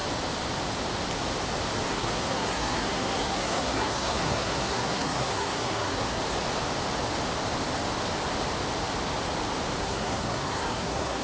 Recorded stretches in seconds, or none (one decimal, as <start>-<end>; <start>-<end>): 0.0-1.9; 6.2-9.8